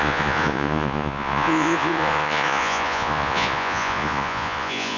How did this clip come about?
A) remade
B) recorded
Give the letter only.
A